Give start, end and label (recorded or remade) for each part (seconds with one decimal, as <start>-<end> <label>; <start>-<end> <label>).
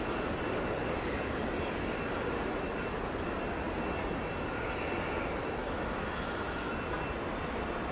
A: 0.0-5.4 recorded; 5.4-6.7 remade; 6.7-7.9 recorded